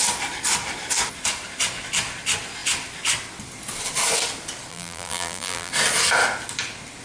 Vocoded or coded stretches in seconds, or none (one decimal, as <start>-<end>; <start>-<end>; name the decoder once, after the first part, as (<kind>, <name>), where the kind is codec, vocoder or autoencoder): 4.7-5.7 (vocoder, BigVGAN v2)

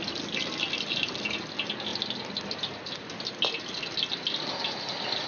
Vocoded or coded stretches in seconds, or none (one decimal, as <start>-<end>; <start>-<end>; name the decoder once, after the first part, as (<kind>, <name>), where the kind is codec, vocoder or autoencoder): none

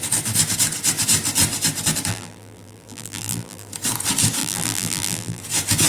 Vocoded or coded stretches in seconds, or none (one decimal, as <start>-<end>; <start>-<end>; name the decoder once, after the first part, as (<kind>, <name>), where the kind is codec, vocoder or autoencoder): 2.1-3.7 (vocoder, BigVGAN v2); 4.4-5.4